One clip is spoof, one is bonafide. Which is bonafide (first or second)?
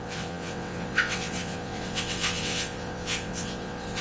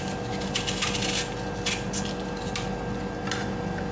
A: second